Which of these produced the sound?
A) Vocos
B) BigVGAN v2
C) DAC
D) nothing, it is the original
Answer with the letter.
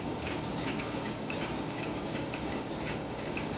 C